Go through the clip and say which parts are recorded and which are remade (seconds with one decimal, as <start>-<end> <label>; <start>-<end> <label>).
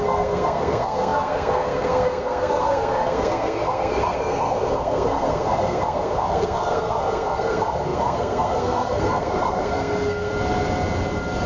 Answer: 0.0-10.3 remade; 10.3-11.5 recorded